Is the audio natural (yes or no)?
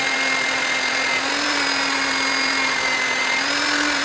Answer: yes